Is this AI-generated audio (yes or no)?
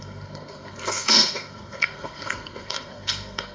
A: yes